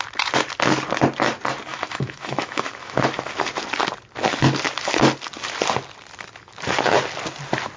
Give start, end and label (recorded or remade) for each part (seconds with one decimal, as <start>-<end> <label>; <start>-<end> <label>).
0.0-1.7 recorded; 1.7-3.0 remade; 3.0-7.8 recorded